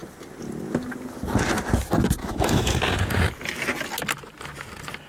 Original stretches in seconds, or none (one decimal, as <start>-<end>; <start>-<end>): 0.0-2.2; 2.8-5.1